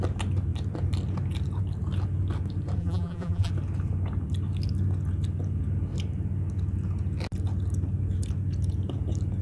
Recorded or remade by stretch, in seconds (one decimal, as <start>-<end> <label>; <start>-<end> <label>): 0.0-2.8 recorded; 2.8-3.5 remade; 3.5-9.4 recorded